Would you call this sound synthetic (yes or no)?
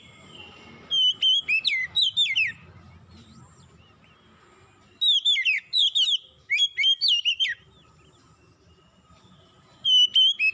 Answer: no